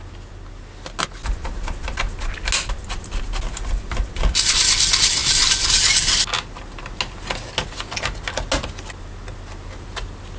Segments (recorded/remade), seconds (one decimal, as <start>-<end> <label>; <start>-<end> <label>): 0.0-10.4 recorded